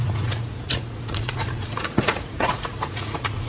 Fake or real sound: fake